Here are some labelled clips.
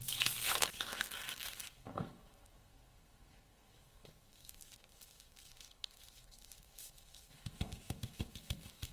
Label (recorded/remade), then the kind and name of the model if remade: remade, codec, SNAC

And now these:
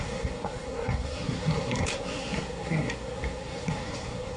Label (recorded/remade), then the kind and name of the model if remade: remade, codec, SNAC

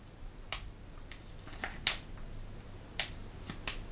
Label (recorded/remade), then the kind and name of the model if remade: recorded